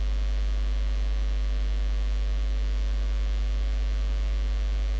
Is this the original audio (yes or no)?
yes